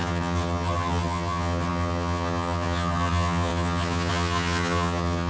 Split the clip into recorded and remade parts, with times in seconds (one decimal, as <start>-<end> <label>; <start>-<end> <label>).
0.0-5.3 remade